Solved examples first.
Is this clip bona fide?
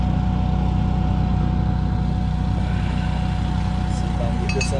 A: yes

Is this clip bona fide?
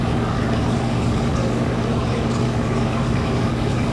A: no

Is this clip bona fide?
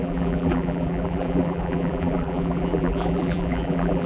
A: no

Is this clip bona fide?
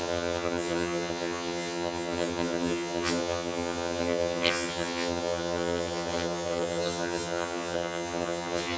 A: no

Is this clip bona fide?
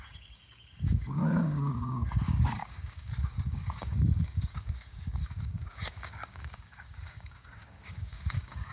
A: no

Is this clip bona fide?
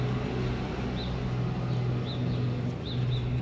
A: yes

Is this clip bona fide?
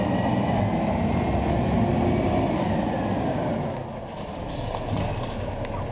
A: yes